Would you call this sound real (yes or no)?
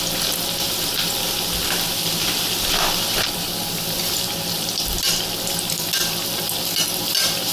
yes